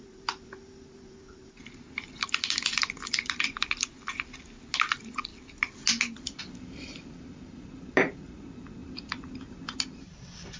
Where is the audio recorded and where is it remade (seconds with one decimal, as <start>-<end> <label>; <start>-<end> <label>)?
0.0-10.6 recorded